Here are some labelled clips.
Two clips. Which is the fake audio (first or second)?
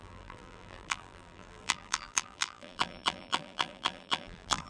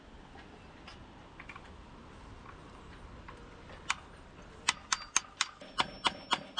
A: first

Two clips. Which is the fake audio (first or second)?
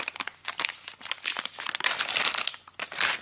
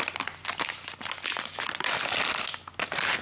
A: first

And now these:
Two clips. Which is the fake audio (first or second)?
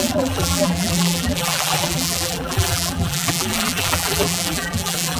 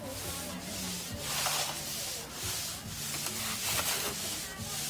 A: first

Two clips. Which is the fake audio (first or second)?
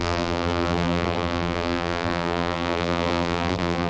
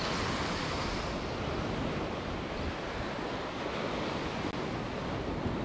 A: first